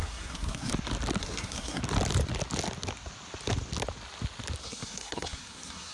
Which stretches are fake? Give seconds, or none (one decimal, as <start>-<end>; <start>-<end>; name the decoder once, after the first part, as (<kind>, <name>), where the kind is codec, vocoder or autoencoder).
0.0-0.7 (codec, SNAC); 1.2-1.8; 4.6-5.9